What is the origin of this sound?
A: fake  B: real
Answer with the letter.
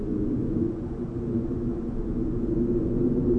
A